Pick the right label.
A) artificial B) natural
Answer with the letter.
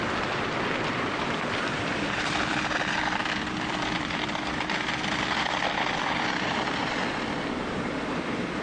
A